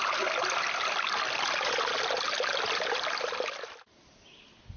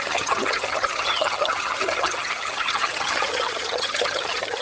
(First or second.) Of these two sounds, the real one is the first